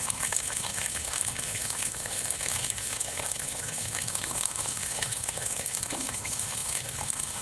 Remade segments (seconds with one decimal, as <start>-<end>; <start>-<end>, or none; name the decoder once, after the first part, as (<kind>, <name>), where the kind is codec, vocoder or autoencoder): 0.0-7.4 (autoencoder, DAC-VAE)